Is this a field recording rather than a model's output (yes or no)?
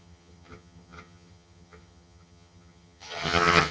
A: no